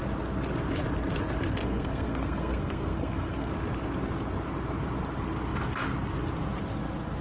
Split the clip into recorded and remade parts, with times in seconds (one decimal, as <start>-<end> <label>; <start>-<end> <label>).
0.0-1.6 recorded; 1.6-3.5 remade; 3.5-7.2 recorded